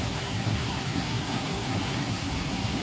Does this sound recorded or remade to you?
remade